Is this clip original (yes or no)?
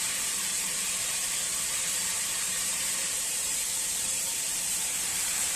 no